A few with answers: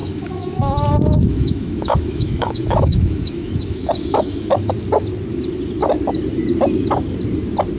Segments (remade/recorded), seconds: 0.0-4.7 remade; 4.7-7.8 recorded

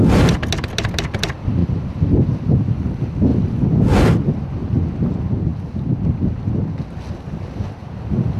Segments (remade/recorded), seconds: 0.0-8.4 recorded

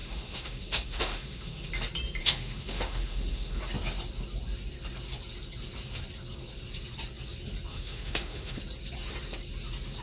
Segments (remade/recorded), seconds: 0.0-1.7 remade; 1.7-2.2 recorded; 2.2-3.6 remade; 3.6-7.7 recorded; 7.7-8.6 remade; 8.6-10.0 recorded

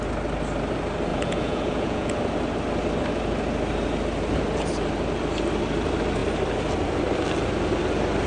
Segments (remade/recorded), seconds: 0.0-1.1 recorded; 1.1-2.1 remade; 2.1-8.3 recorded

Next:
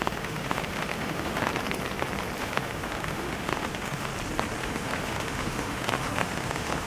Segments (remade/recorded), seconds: 0.0-1.5 remade; 1.5-2.4 recorded; 2.4-4.1 remade; 4.1-4.6 recorded; 4.6-6.9 remade

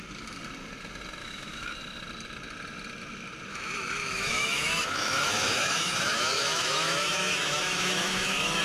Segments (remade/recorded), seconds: 0.0-1.2 recorded; 1.2-1.7 remade; 1.7-3.5 recorded; 3.5-8.6 remade

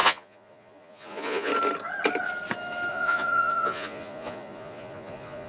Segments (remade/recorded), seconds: 0.0-1.5 remade; 1.5-2.9 recorded; 2.9-5.5 remade

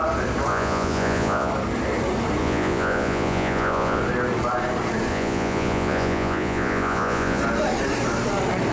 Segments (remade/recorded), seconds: 0.0-0.5 recorded; 0.5-1.5 remade; 1.5-2.4 recorded; 2.4-4.0 remade; 4.0-5.1 recorded; 5.1-7.4 remade; 7.4-8.7 recorded